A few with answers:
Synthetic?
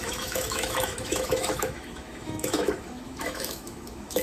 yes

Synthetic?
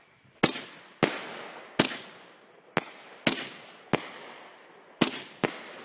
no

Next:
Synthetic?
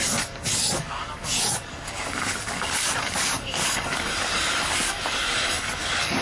yes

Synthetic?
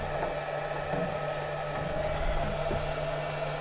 no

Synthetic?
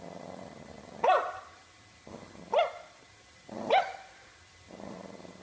yes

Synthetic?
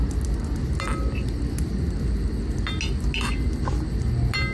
no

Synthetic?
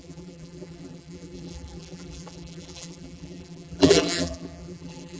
yes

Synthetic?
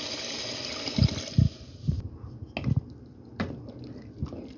no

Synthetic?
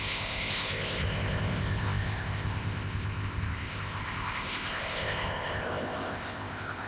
yes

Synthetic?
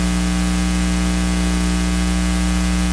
no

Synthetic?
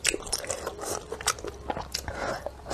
yes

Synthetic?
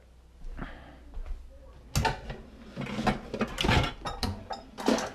no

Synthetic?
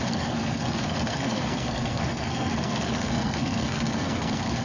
yes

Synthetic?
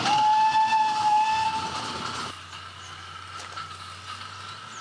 no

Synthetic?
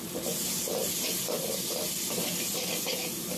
no